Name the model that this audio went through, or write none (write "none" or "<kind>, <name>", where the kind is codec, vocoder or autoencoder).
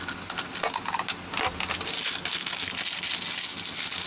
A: none